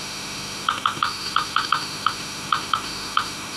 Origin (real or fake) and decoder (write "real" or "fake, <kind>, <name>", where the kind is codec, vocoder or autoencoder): fake, autoencoder, DAC-VAE